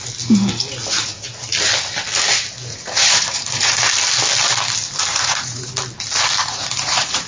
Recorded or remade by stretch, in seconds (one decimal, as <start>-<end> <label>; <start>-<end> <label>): 0.0-2.7 recorded; 2.7-3.8 remade; 3.8-5.1 recorded; 5.1-5.7 remade; 5.7-6.4 recorded; 6.4-7.3 remade